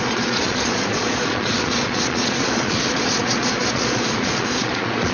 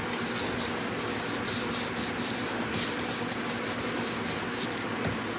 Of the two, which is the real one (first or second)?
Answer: second